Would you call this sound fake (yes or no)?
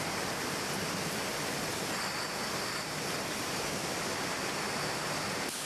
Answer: no